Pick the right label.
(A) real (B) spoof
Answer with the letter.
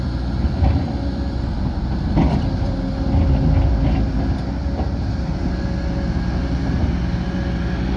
A